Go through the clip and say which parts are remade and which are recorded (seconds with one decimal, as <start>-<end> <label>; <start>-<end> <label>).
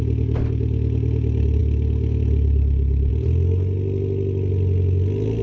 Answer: 0.0-5.4 recorded